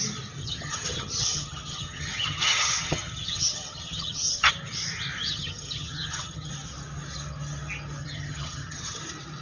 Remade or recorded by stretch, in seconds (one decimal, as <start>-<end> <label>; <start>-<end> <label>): 0.0-0.4 recorded; 0.4-4.5 remade; 4.5-5.2 recorded; 5.2-6.5 remade; 6.5-8.0 recorded; 8.0-9.0 remade; 9.0-9.4 recorded